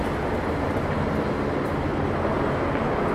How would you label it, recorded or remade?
recorded